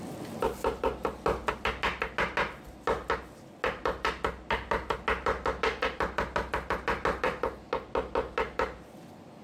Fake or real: real